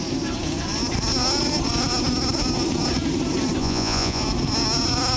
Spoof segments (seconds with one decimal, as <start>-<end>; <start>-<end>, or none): 3.6-4.2